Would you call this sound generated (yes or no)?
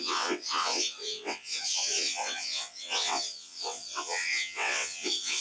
yes